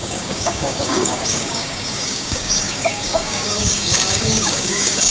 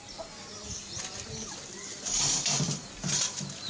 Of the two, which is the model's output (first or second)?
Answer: first